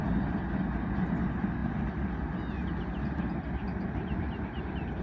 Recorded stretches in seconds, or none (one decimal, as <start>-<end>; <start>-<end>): 0.0-5.0